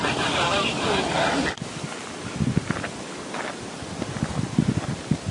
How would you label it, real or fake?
real